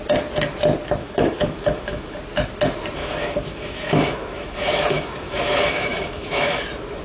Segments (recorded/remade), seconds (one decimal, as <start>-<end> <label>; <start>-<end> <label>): 0.0-1.0 recorded; 1.0-2.2 remade; 2.2-3.0 recorded; 3.0-6.6 remade; 6.6-7.0 recorded